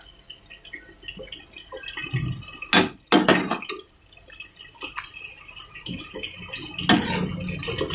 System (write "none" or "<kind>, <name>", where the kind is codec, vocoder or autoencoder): none